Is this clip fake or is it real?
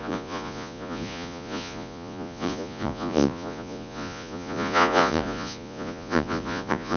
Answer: fake